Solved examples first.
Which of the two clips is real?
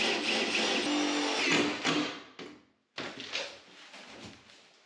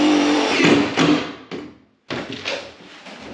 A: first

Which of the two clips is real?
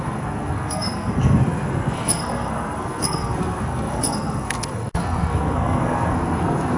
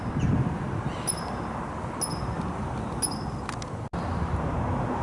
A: second